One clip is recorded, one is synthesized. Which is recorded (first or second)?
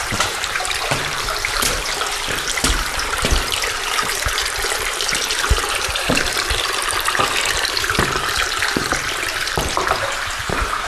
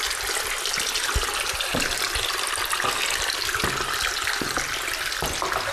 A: second